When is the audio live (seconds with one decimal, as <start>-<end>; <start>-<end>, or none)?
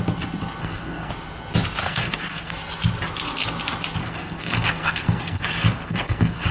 0.0-0.6; 1.1-1.8; 2.5-4.0